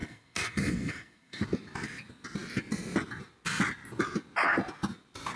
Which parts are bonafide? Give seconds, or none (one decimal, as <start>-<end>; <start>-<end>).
1.4-5.4